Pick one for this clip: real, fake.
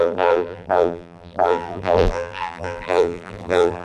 fake